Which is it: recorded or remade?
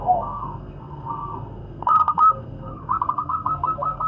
remade